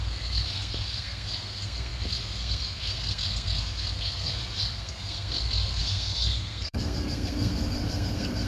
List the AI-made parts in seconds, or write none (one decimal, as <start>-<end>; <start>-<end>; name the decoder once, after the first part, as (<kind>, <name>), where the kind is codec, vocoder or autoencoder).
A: 0.0-8.5 (codec, SNAC)